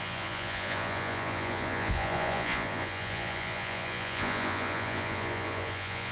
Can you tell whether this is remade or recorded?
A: remade